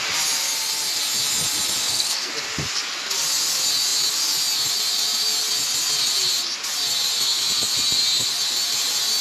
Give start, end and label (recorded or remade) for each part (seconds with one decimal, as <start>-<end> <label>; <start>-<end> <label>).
0.0-1.8 recorded; 1.8-2.3 remade; 2.3-9.2 recorded